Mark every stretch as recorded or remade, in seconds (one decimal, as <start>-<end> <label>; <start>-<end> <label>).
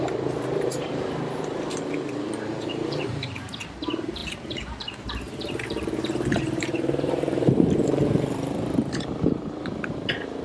0.0-10.4 remade